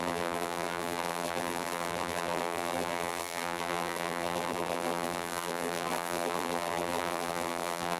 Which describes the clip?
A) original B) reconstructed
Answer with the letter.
B